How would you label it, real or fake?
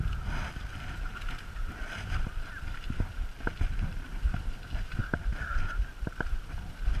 real